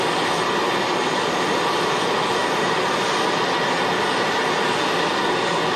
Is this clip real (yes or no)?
yes